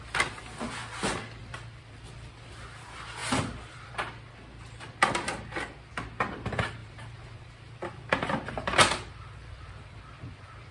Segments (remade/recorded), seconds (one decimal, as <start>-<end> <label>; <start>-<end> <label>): 0.0-1.4 recorded; 1.4-2.5 remade; 2.5-3.2 recorded; 3.2-3.9 remade; 3.9-6.8 recorded; 6.8-10.0 remade; 10.0-10.7 recorded